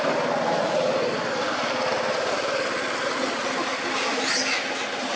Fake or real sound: real